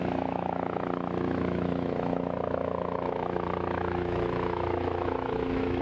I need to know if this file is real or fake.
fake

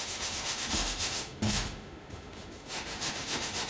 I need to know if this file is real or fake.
fake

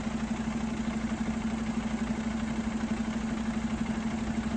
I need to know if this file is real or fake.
real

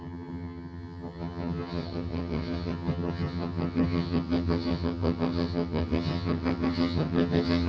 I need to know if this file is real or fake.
fake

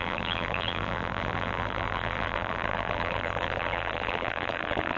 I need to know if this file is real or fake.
fake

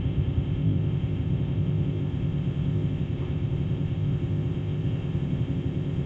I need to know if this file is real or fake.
fake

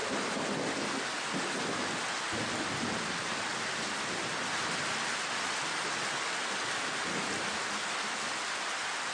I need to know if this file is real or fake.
real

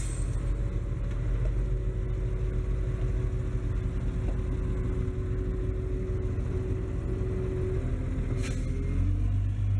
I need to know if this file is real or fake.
real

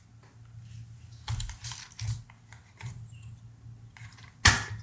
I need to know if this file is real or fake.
real